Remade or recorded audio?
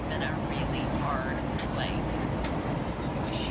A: recorded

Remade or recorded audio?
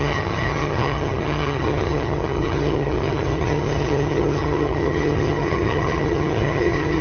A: remade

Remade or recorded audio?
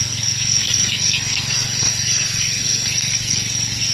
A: remade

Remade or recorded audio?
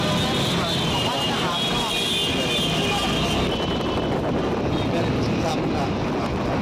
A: recorded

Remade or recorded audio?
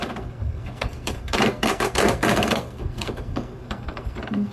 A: remade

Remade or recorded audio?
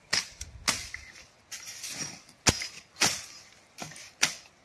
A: recorded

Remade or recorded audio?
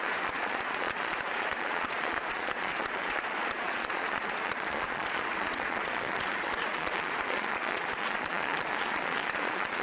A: remade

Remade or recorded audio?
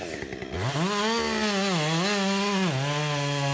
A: recorded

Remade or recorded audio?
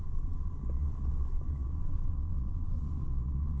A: remade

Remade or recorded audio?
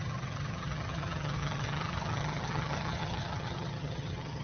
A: remade